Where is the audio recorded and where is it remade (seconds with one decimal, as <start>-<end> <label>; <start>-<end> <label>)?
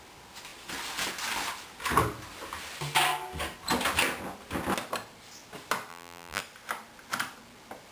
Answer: 0.0-5.9 recorded; 5.9-6.4 remade; 6.4-7.9 recorded